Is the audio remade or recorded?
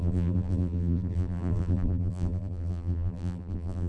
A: remade